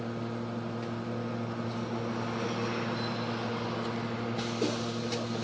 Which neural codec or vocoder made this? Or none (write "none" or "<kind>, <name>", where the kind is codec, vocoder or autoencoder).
none